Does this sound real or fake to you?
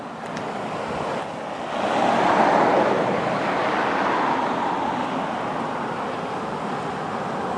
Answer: real